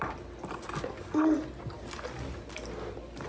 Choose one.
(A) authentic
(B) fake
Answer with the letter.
A